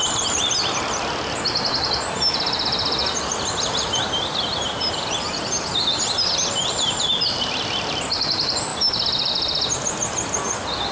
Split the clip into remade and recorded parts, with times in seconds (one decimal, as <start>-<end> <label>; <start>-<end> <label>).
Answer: 0.0-3.0 recorded; 3.0-7.5 remade; 7.5-10.9 recorded